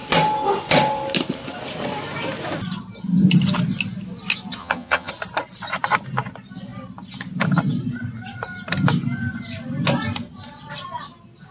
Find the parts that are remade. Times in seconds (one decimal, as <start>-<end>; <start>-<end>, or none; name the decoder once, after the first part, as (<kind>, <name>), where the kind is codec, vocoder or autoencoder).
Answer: 4.6-5.1 (vocoder, HiFi-GAN)